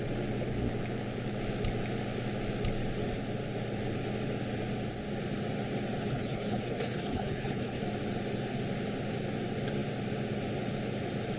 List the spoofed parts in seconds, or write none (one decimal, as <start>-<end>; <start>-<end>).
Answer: 6.0-7.8